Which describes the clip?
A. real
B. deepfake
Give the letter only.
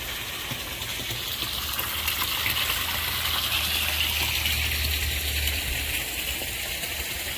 A